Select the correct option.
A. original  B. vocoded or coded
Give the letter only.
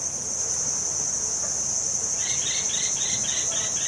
A